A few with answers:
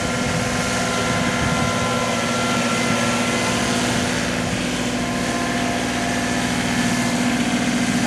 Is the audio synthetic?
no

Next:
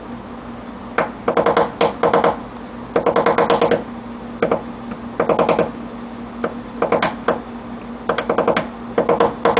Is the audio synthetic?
no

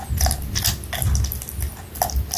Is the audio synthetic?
no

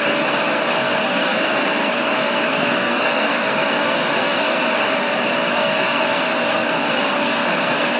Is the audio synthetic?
yes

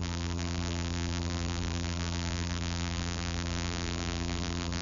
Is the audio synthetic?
yes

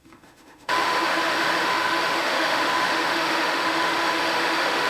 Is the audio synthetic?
yes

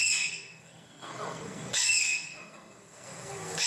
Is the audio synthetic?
yes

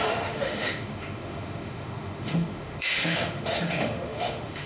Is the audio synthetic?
yes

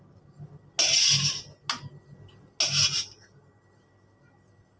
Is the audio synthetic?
no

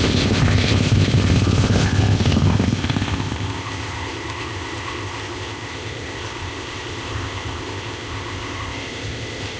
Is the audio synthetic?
yes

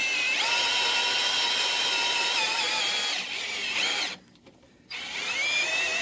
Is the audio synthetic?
yes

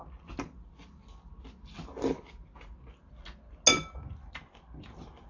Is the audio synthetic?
no